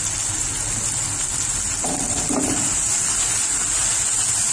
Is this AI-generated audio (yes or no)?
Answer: no